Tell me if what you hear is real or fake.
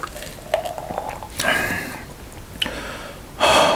real